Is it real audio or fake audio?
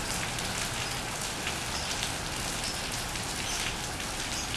real